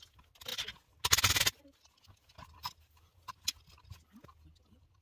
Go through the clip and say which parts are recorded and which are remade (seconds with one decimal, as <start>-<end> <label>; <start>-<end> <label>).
0.0-5.0 recorded